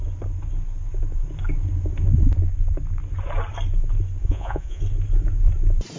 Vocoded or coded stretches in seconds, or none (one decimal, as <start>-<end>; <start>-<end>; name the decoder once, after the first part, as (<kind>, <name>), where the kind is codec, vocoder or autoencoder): 4.2-4.8 (vocoder, Vocos)